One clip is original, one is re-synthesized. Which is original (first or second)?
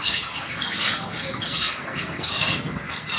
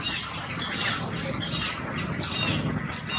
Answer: second